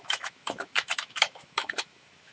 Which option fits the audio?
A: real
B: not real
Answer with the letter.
B